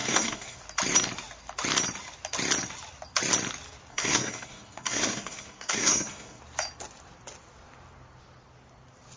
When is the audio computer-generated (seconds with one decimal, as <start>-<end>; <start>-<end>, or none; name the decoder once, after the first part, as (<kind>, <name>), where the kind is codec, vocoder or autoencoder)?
0.0-0.6 (codec, SNAC); 3.9-6.4